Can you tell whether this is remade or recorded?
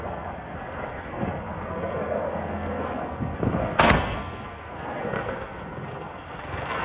remade